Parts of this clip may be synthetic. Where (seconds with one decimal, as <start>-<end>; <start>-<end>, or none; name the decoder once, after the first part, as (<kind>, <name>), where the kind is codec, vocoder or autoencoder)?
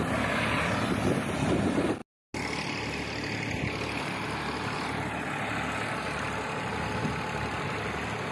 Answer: none